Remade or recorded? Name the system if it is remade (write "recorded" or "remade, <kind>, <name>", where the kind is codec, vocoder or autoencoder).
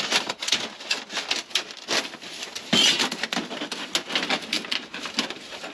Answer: recorded